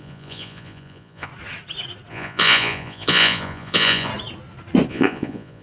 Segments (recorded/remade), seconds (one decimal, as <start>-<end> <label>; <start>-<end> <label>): 0.0-1.3 remade; 1.3-2.1 recorded; 2.1-4.1 remade; 4.1-4.9 recorded; 4.9-5.6 remade